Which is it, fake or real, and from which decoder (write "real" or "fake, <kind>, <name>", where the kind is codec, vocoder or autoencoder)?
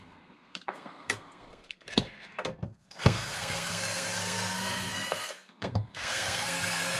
fake, codec, SNAC